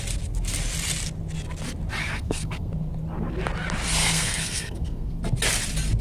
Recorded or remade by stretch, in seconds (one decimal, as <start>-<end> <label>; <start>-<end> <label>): 0.0-2.0 recorded; 2.0-2.7 remade; 2.7-4.0 recorded; 4.0-5.2 remade; 5.2-6.0 recorded